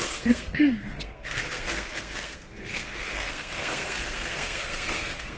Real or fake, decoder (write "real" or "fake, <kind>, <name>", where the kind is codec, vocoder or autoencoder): fake, codec, SNAC